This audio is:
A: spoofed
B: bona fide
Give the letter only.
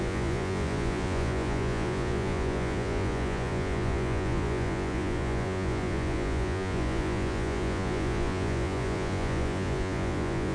A